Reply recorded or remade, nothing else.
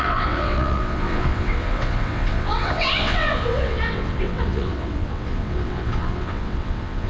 remade